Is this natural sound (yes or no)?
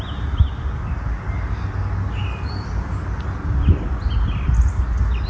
yes